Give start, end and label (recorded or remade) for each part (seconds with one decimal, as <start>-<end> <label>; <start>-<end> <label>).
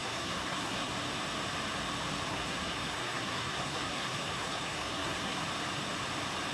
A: 0.0-0.9 remade; 0.9-2.3 recorded; 2.3-5.4 remade; 5.4-6.5 recorded